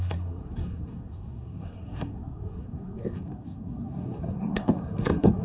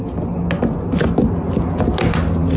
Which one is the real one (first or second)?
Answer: second